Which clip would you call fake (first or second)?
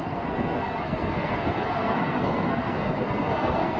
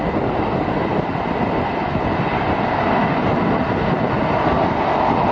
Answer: first